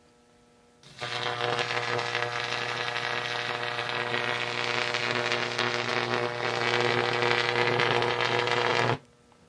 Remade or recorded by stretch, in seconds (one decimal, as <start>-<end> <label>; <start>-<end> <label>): 0.0-9.5 recorded